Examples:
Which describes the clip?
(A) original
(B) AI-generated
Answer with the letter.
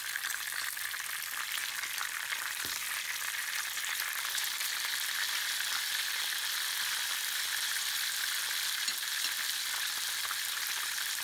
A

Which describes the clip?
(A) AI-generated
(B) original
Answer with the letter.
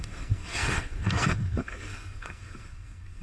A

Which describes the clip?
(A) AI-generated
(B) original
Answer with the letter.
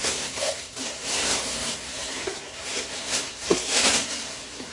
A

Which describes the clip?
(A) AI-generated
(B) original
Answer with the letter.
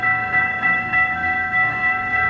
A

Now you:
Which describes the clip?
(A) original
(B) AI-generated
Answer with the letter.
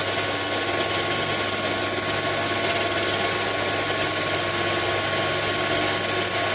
A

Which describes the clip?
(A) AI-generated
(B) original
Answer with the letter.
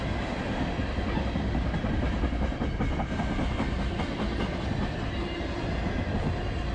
B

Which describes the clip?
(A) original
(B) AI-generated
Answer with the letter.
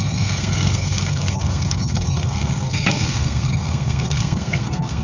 B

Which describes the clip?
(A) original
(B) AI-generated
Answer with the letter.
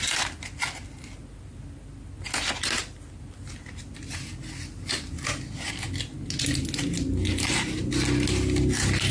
A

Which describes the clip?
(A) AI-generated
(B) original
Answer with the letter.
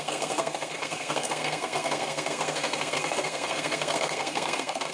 A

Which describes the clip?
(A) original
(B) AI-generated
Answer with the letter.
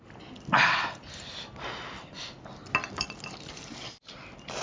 A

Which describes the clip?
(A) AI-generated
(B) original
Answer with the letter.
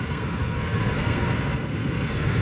A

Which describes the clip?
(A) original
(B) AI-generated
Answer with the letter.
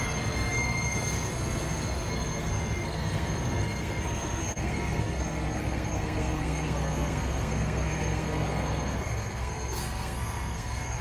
B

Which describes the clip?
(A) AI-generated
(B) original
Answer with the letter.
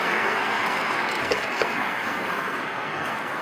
A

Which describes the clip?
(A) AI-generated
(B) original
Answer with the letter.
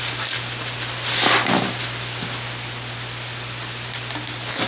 B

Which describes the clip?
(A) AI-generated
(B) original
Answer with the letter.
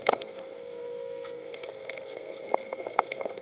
A